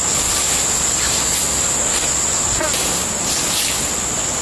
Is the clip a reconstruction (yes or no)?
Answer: no